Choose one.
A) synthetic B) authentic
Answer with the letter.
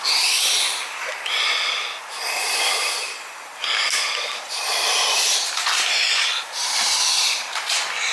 A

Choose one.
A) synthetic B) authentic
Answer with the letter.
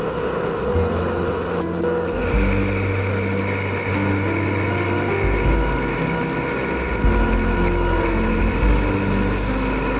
B